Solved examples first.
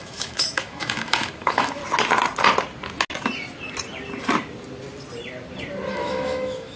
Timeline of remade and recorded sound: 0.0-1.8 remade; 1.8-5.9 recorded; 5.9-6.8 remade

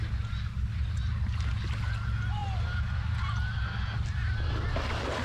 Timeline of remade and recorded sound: 0.0-5.2 recorded

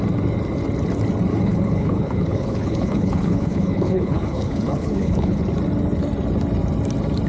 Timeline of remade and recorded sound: 0.0-1.3 recorded; 1.3-5.4 remade; 5.4-7.3 recorded